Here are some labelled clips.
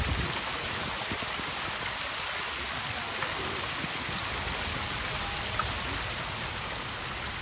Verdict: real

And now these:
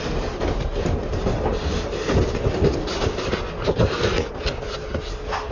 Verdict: real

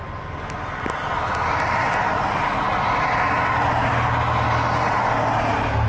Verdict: real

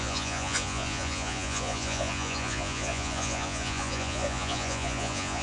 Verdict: fake